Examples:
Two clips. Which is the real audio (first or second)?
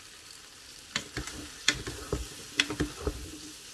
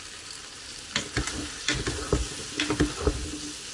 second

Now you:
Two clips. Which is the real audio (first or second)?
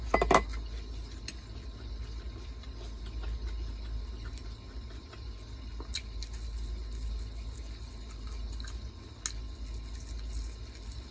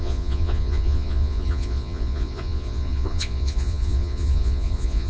first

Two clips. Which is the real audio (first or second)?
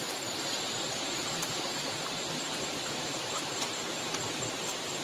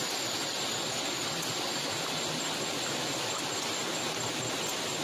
second